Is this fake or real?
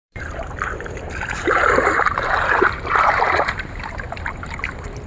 fake